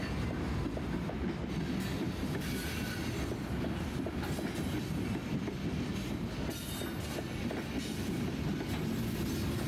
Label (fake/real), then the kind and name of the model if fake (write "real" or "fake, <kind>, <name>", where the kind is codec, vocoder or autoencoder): real